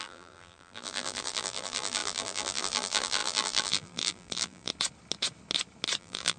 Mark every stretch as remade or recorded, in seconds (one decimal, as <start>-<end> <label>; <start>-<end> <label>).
0.0-4.7 remade; 4.7-6.0 recorded; 6.0-6.4 remade